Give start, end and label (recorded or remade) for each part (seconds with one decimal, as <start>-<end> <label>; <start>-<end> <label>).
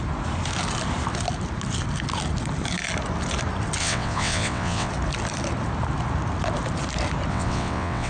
0.0-3.8 recorded; 3.8-4.9 remade; 4.9-7.3 recorded; 7.3-8.1 remade